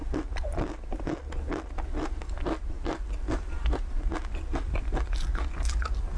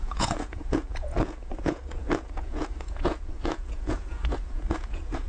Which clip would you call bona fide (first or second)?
first